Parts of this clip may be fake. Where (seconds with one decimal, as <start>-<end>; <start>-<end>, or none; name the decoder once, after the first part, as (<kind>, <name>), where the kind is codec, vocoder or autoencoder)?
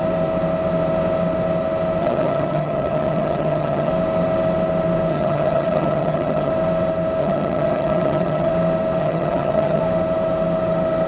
2.0-3.9 (vocoder, HiFi-GAN); 5.1-6.5; 7.2-8.5; 9.0-9.8